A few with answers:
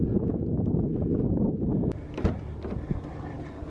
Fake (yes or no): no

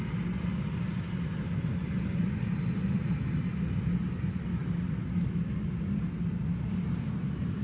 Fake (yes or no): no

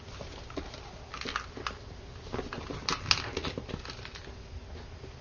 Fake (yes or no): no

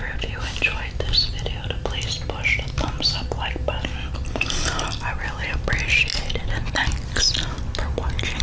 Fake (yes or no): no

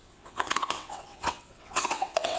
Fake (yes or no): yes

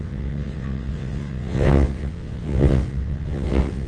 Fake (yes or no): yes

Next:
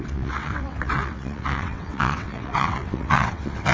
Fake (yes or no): yes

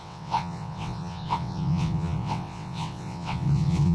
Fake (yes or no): yes